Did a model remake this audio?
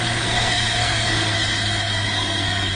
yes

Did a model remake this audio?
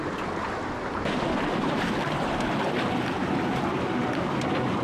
no